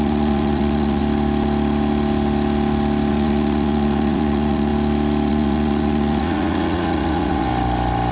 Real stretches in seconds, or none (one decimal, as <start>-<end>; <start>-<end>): 1.0-3.1; 4.7-5.3; 7.5-8.1